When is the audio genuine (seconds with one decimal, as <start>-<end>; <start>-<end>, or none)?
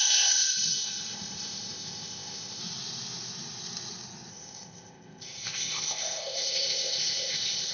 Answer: 2.6-4.3